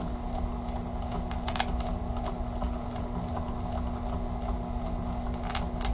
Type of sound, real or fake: real